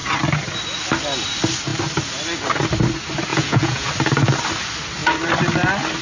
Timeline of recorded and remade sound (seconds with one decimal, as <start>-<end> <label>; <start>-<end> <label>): 0.0-3.3 recorded; 3.3-3.9 remade; 3.9-6.0 recorded